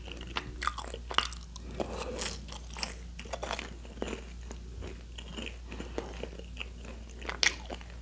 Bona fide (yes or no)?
yes